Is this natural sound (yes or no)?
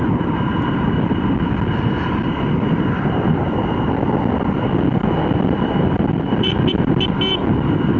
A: yes